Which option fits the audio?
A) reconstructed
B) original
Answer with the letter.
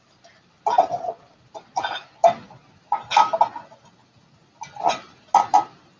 B